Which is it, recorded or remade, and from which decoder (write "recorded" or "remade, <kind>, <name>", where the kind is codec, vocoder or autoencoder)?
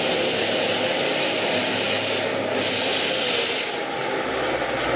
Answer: recorded